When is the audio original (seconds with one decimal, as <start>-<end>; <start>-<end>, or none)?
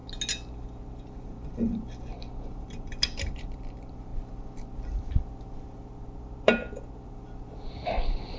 0.0-1.1